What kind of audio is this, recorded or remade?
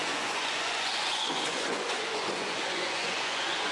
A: remade